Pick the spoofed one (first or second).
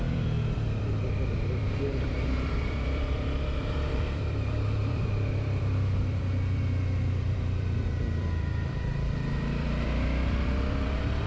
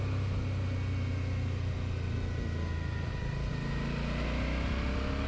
first